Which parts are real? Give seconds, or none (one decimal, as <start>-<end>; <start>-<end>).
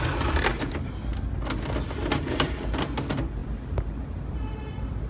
0.0-0.5; 1.0-5.1